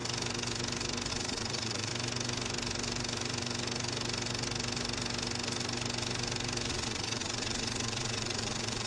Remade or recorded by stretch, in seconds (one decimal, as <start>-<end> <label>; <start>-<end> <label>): 0.0-1.1 recorded; 1.1-1.9 remade; 1.9-6.7 recorded; 6.7-8.9 remade